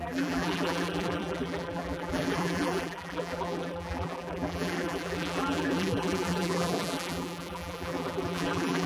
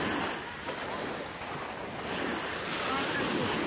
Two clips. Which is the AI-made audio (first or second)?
first